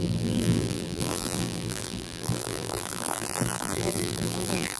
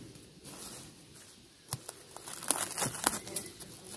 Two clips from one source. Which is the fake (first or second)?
first